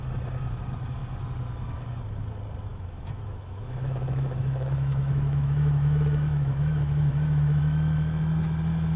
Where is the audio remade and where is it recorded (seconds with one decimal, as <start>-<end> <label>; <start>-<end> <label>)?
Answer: 0.0-2.7 recorded; 2.7-7.6 remade; 7.6-9.0 recorded